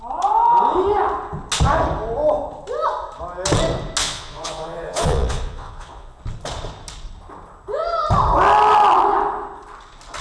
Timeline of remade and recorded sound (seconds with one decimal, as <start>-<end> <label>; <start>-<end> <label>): 0.0-4.0 recorded; 4.0-6.2 remade; 6.2-10.2 recorded